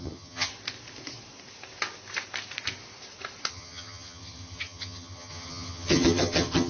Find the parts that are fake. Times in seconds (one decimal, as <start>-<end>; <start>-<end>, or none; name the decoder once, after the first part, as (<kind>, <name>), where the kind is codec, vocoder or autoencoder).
0.0-0.5 (vocoder, HiFi-GAN); 3.5-6.7